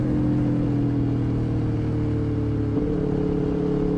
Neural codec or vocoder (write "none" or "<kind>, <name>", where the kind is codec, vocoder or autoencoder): none